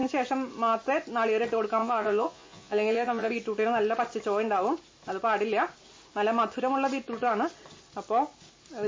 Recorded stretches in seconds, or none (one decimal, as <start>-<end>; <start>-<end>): 0.0-1.8; 3.3-8.9